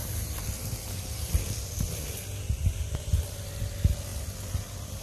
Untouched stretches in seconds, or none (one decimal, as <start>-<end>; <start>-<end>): 1.8-4.1